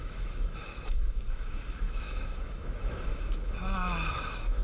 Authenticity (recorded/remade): remade